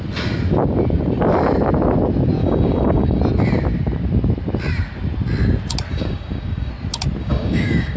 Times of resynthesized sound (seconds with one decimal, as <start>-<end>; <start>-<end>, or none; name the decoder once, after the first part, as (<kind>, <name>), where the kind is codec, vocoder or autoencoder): 2.4-3.2 (codec, DAC); 5.9-6.7; 7.2-8.0